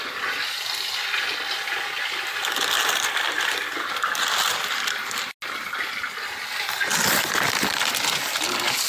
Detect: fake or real real